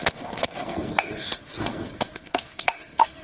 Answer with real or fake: fake